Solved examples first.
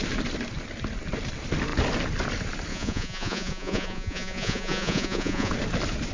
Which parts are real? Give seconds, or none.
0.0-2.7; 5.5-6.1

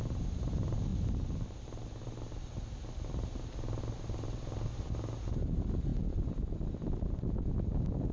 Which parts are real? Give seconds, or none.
0.0-8.1

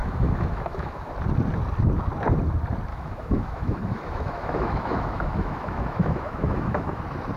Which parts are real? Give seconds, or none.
1.1-2.9; 7.0-7.4

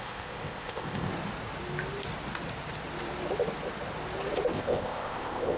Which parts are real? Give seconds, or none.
1.1-4.5

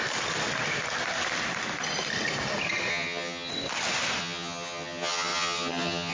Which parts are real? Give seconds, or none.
0.0-2.9; 3.5-4.2

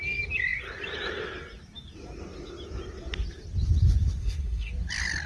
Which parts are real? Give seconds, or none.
0.0-4.2; 4.7-5.3